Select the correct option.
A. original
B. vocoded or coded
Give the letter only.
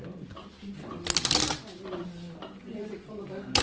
A